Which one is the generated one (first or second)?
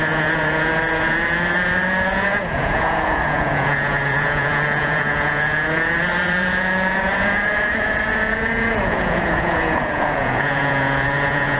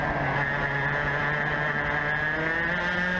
first